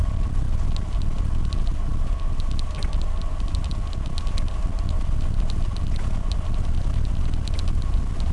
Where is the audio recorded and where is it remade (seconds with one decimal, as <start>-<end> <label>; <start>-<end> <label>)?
0.0-8.3 recorded